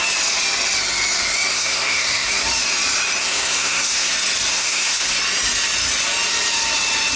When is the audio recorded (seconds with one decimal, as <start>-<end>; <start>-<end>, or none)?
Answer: 0.0-1.5; 2.3-3.2; 4.1-4.5; 5.2-7.2